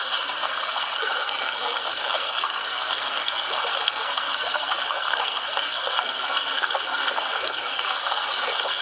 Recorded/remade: remade